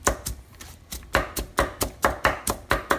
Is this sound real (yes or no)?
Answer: yes